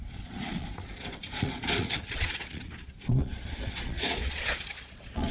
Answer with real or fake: fake